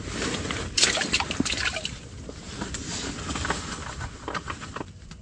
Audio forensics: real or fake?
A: real